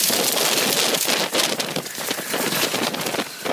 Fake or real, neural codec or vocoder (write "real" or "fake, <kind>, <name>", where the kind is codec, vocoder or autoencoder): real